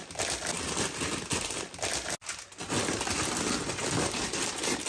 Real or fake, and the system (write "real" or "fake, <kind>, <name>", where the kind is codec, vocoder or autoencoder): real